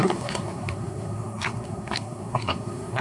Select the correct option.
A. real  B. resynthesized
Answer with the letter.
B